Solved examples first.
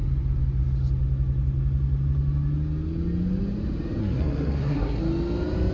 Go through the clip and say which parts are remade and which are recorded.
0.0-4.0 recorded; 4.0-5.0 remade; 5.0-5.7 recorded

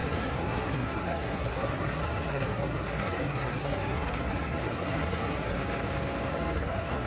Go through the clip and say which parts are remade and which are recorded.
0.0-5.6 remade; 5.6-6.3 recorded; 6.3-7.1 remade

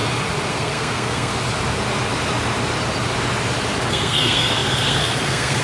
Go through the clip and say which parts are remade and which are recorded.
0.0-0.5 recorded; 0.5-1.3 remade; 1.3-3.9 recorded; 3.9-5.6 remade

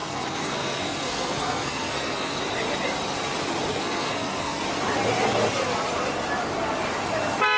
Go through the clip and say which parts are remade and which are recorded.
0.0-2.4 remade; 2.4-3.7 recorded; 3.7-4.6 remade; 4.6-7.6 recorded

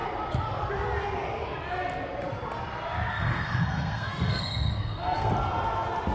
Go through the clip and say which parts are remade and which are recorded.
0.0-3.1 recorded; 3.1-5.3 remade; 5.3-6.1 recorded

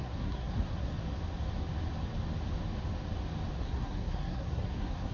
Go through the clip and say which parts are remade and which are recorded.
0.0-1.0 remade; 1.0-3.6 recorded; 3.6-5.1 remade

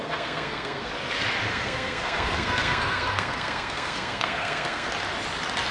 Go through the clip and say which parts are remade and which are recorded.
0.0-0.9 remade; 0.9-1.5 recorded; 1.5-4.9 remade; 4.9-5.7 recorded